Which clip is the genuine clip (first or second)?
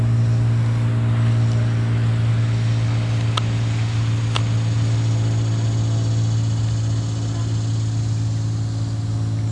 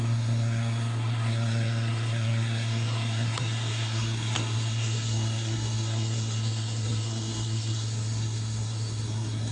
first